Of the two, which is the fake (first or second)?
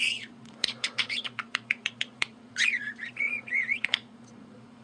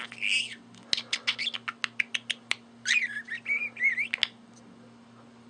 first